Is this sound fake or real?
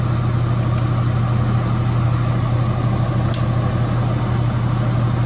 real